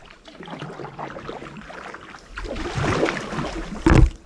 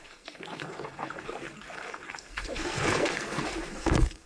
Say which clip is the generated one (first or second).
second